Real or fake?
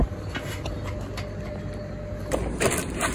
real